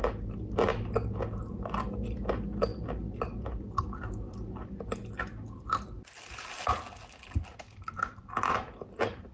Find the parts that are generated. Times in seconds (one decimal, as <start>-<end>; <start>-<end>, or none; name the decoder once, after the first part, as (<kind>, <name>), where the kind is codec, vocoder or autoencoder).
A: none